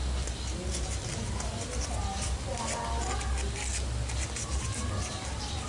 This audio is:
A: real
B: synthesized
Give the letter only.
A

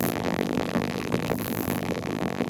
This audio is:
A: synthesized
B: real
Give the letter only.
A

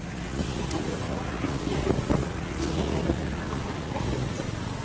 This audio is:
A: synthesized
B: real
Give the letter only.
A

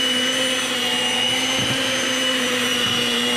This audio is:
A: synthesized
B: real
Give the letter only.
A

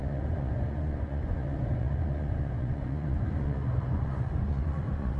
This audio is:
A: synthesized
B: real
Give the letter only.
A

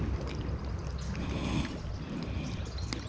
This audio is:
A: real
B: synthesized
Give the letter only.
A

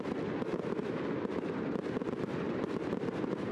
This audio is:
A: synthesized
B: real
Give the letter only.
B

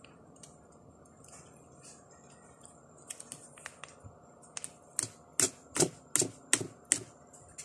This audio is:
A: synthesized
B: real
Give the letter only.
B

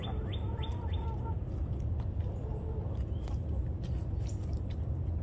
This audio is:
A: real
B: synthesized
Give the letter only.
A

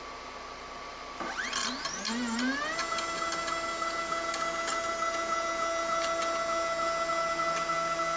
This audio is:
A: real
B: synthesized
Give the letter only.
A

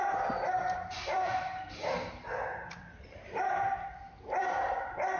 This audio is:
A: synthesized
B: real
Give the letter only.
A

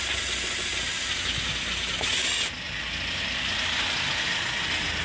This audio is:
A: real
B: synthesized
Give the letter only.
A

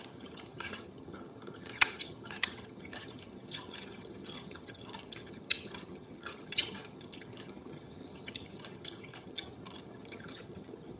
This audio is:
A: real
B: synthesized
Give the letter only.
B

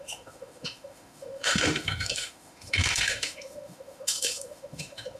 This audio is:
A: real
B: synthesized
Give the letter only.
B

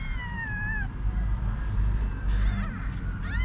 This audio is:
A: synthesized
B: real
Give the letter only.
B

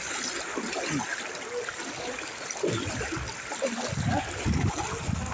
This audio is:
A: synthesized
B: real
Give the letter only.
B